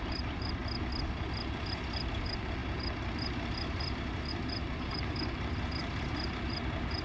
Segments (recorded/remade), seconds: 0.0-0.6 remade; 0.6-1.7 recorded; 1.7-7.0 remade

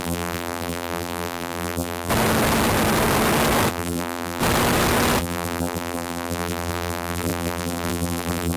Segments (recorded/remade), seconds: 0.0-2.1 remade; 2.1-3.7 recorded; 3.7-4.4 remade; 4.4-5.2 recorded; 5.2-8.6 remade

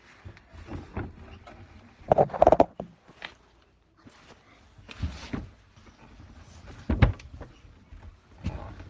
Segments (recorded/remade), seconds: 0.0-8.9 recorded

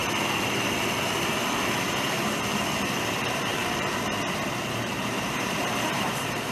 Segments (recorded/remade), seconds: 0.0-1.9 recorded; 1.9-2.5 remade; 2.5-3.0 recorded; 3.0-3.6 remade; 3.6-4.8 recorded; 4.8-6.5 remade